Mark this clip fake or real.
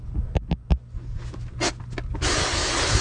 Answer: real